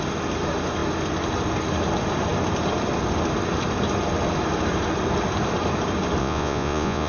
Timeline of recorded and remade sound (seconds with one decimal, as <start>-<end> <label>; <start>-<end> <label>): 0.0-6.2 recorded; 6.2-7.1 remade